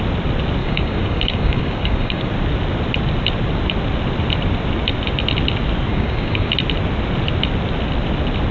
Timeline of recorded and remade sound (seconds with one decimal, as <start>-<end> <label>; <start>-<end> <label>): 0.0-0.6 recorded; 0.6-2.3 remade; 2.3-5.9 recorded; 5.9-6.5 remade; 6.5-8.5 recorded